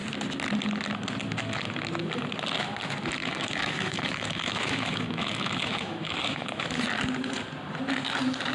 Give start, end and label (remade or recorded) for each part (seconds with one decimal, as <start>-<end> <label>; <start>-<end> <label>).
0.0-3.2 recorded; 3.2-6.6 remade; 6.6-8.5 recorded